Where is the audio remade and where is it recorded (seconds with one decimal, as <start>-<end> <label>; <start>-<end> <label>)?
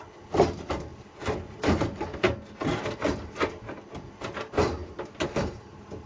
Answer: 0.0-6.1 recorded